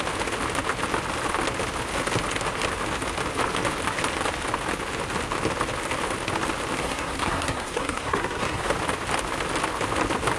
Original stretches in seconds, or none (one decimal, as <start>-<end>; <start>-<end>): 0.0-6.8; 8.7-10.4